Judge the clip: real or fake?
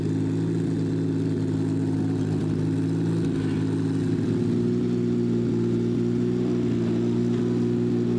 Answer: real